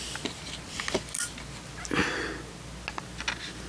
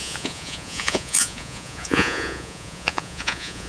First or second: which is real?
first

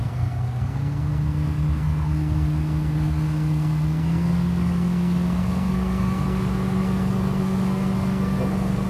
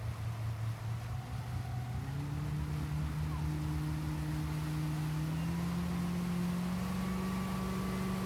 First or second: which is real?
second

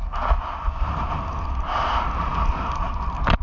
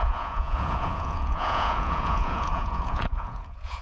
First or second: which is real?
first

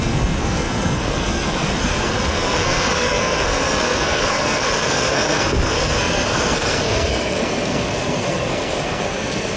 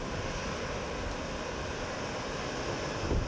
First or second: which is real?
second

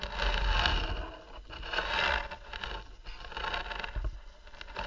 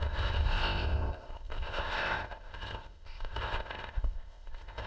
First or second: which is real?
first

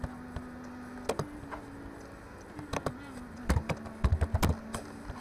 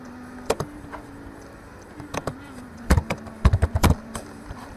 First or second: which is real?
first